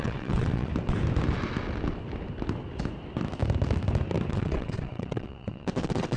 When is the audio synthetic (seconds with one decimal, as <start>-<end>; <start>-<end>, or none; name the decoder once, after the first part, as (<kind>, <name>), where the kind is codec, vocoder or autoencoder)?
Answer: 0.0-0.7 (vocoder, WaveNeXt); 4.3-6.2